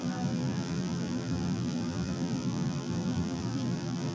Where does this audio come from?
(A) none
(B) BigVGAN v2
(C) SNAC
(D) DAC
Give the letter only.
B